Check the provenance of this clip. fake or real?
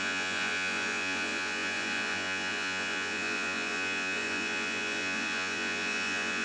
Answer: fake